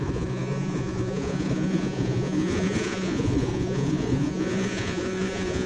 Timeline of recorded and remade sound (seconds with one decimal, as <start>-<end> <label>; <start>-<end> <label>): 0.0-5.7 remade